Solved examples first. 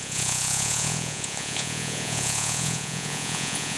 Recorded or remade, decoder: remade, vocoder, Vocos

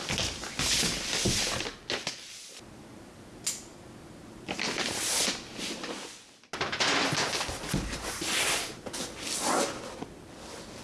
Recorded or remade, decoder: recorded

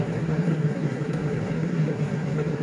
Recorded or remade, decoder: remade, codec, SNAC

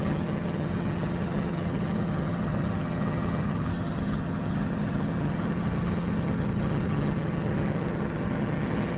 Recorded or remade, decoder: remade, vocoder, HiFi-GAN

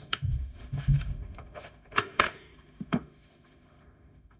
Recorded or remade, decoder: remade, autoencoder, DAC-VAE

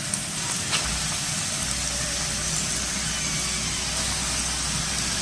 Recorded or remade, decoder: recorded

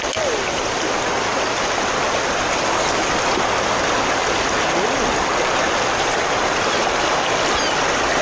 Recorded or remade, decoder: recorded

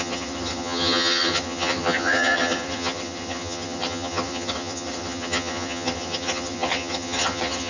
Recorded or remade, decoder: remade, vocoder, HiFi-GAN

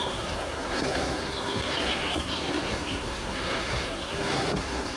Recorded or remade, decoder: remade, codec, SNAC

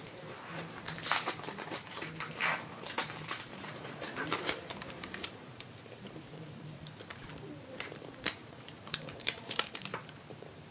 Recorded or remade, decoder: remade, vocoder, BigVGAN v2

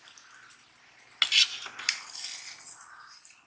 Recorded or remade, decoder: recorded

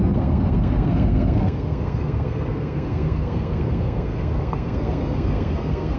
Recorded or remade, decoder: remade, codec, SNAC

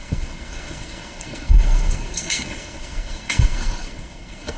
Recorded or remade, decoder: remade, codec, SNAC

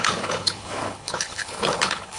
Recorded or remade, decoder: remade, codec, HILCodec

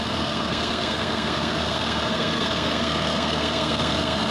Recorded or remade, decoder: remade, codec, SNAC